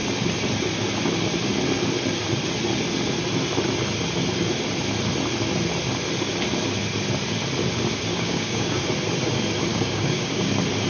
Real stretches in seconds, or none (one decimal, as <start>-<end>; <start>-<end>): 0.0-8.1; 8.8-9.7; 10.5-10.9